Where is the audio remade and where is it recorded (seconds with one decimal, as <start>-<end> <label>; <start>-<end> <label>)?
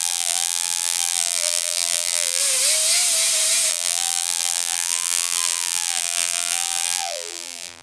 0.0-2.4 remade; 2.4-3.7 recorded; 3.7-7.8 remade